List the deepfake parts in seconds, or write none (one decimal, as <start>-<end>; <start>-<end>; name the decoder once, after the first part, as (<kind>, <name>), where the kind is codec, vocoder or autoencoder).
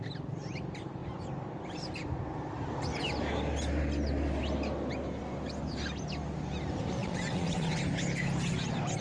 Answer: 7.0-7.8 (vocoder, WaveNeXt)